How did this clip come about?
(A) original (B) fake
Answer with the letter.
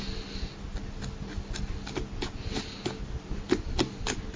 A